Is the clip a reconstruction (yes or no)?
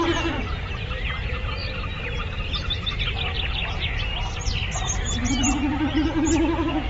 no